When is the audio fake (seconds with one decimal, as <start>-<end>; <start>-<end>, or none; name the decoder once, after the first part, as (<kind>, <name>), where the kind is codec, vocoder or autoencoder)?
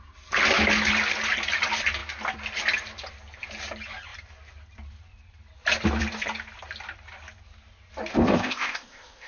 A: 8.1-9.3 (codec, ZipCodec)